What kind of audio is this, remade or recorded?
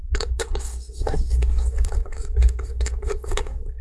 remade